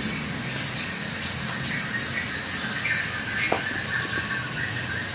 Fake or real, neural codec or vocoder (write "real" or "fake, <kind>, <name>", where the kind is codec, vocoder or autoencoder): real